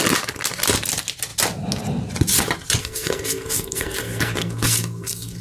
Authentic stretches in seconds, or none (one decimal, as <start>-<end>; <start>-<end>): 0.0-2.8